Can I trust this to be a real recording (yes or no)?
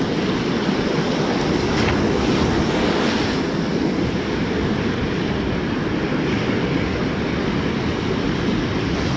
yes